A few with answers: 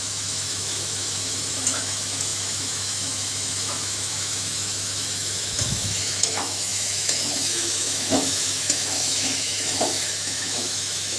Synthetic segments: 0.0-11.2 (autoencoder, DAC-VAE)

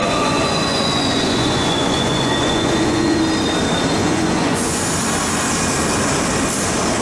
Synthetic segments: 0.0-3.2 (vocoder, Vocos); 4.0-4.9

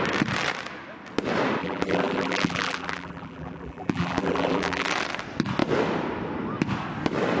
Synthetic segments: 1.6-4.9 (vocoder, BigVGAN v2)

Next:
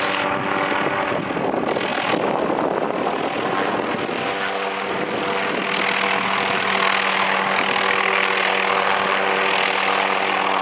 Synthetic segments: none

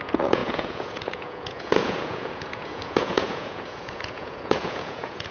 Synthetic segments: 0.0-5.3 (vocoder, Vocos)

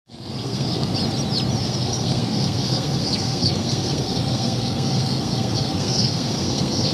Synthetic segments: 0.0-0.9 (codec, SNAC); 1.6-6.9